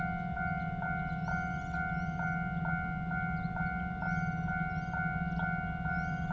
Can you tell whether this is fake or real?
real